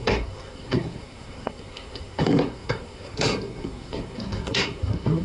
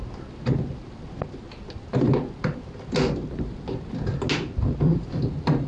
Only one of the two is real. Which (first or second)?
second